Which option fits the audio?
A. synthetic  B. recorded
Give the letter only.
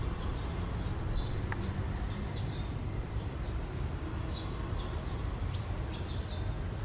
B